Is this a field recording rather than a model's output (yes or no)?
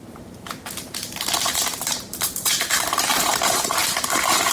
no